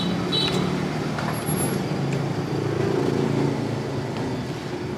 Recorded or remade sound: recorded